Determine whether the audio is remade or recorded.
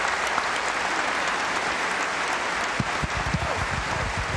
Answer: recorded